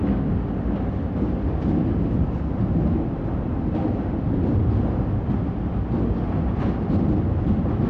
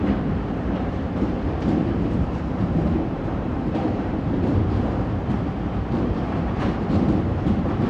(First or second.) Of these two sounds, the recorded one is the first